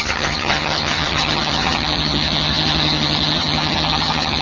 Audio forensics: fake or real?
fake